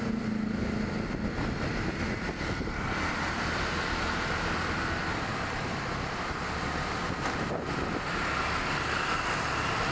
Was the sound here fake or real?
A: real